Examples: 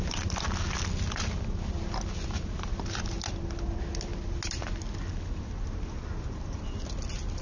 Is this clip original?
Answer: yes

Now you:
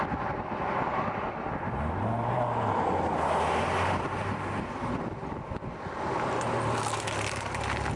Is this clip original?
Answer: yes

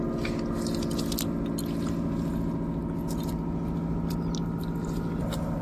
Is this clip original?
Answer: yes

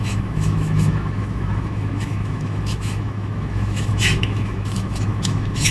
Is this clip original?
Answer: no